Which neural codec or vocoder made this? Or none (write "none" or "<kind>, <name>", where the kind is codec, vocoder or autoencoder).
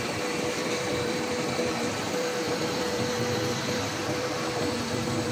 vocoder, BigVGAN v2